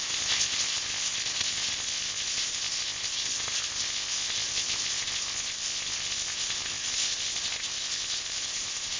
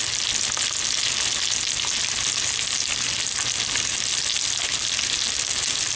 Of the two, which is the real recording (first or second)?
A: second